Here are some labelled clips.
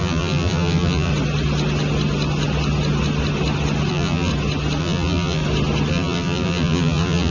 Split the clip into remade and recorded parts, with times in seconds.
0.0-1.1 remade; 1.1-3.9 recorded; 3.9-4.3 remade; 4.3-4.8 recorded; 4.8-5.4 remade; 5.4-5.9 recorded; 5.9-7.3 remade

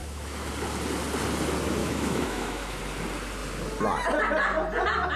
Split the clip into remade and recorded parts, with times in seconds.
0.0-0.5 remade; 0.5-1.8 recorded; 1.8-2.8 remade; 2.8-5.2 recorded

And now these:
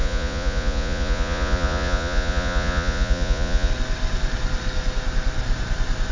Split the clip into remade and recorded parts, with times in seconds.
0.0-3.7 remade; 3.7-6.1 recorded